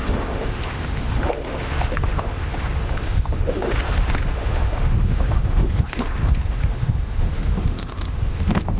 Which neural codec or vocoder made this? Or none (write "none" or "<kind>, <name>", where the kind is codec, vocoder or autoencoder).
autoencoder, DAC-VAE